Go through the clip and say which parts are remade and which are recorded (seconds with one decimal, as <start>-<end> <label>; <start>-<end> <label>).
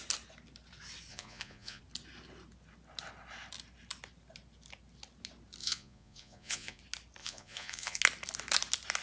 0.0-1.1 recorded; 1.1-1.8 remade; 1.8-5.6 recorded; 5.6-6.8 remade; 6.8-7.2 recorded; 7.2-8.0 remade; 8.0-9.0 recorded